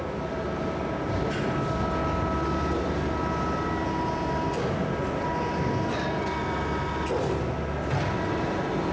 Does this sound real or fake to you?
real